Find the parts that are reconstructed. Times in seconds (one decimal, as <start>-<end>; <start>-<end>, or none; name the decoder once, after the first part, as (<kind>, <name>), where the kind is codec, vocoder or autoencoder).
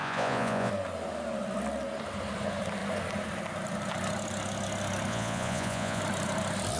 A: 0.0-0.7 (vocoder, Vocos); 5.1-6.0